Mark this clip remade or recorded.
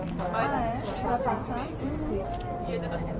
recorded